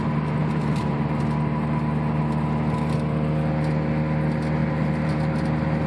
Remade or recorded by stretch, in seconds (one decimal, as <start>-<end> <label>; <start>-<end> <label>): 0.0-0.4 recorded; 0.4-1.2 remade; 1.2-4.6 recorded; 4.6-5.1 remade; 5.1-5.9 recorded